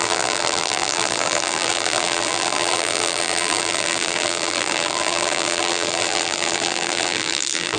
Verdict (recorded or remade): remade